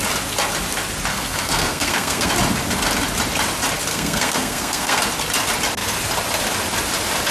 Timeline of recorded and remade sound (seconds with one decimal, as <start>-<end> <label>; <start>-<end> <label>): 0.0-1.1 recorded; 1.1-2.3 remade; 2.3-3.9 recorded; 3.9-5.0 remade; 5.0-7.3 recorded